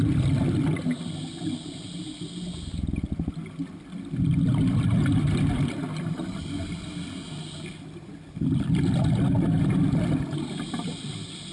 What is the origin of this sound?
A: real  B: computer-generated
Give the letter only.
A